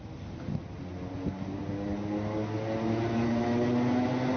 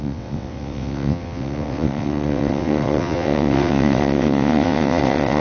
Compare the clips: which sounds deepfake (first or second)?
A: second